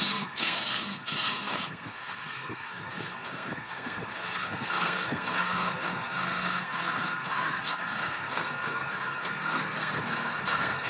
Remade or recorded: remade